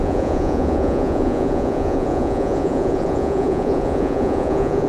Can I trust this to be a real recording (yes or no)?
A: no